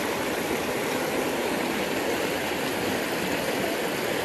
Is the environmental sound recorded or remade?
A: recorded